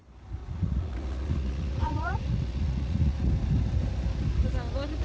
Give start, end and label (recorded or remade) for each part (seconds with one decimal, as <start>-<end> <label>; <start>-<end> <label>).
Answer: 0.0-0.4 recorded; 0.4-3.3 remade; 3.3-5.0 recorded